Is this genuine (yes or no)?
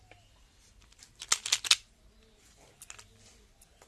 yes